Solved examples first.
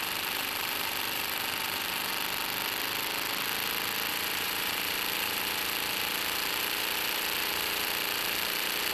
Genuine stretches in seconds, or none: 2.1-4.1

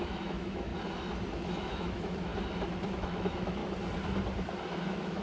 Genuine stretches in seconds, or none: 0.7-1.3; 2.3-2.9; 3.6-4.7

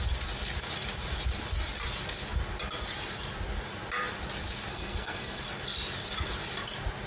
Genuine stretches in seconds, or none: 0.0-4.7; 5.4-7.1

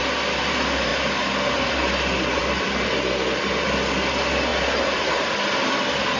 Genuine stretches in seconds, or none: 0.0-6.2

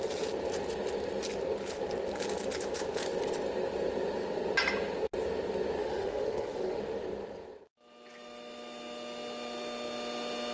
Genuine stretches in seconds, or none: 0.0-5.8; 6.8-10.5